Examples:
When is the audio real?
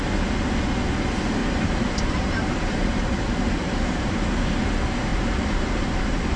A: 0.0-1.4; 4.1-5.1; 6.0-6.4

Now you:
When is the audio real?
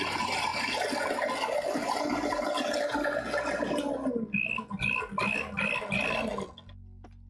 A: 0.0-7.3